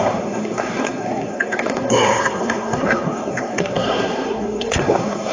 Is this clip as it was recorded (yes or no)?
no